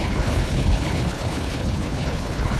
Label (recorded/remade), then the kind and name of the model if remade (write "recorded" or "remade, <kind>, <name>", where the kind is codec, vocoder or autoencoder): remade, codec, HILCodec